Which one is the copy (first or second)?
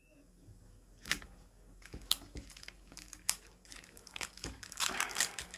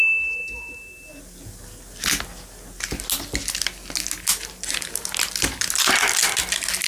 first